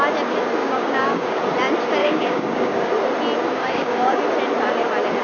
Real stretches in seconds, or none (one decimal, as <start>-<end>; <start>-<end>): 0.0-0.6; 1.4-2.0; 2.9-3.6; 4.2-5.2